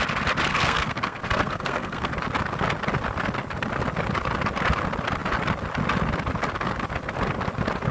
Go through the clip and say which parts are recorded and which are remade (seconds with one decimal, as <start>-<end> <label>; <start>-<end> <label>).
0.0-0.5 recorded; 0.5-2.1 remade; 2.1-7.9 recorded